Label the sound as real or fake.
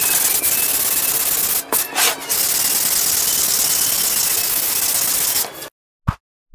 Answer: real